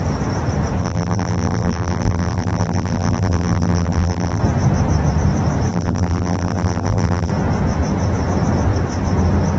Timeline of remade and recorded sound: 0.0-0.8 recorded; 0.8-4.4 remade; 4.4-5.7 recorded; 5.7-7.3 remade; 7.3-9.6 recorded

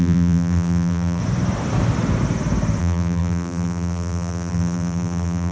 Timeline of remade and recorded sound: 0.0-1.2 remade; 1.2-2.8 recorded; 2.8-5.5 remade

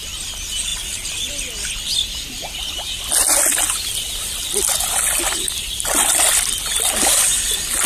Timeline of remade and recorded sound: 0.0-7.9 recorded

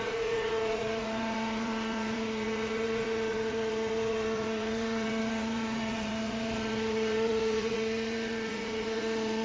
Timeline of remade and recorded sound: 0.0-9.4 remade

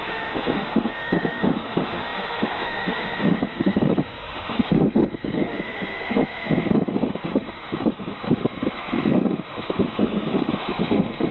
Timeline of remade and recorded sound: 0.0-11.3 remade

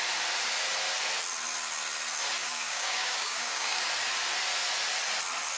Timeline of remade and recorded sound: 0.0-2.4 recorded; 2.4-3.8 remade; 3.8-5.6 recorded

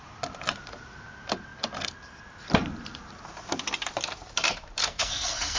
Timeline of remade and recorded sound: 0.0-4.8 recorded; 4.8-5.6 remade